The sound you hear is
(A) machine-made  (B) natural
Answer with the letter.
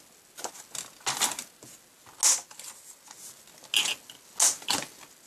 B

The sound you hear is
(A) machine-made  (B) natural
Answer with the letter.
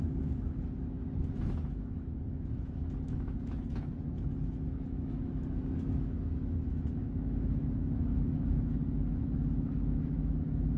A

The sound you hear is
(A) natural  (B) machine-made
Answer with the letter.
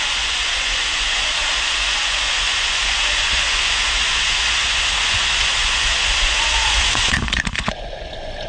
B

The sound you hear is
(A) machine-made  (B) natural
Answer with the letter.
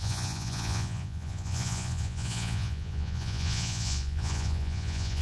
A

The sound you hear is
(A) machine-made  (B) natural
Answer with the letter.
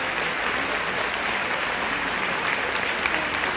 B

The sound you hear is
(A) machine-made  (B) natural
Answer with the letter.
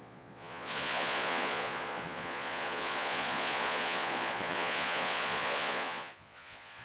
A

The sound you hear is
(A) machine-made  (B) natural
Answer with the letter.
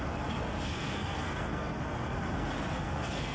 A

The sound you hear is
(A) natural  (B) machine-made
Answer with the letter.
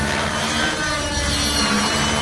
A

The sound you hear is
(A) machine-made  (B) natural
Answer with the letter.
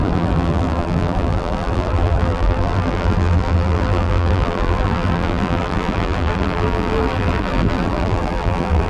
A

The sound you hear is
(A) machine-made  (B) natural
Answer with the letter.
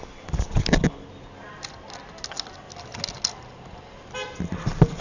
B